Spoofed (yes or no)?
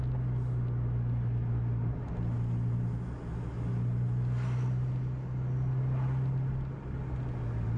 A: no